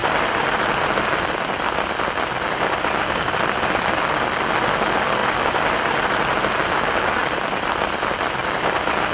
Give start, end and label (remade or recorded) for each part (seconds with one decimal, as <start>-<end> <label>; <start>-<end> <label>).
0.0-5.2 recorded; 5.2-6.3 remade; 6.3-7.2 recorded; 7.2-8.4 remade; 8.4-9.1 recorded